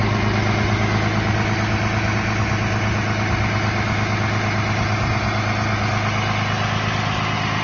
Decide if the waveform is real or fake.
real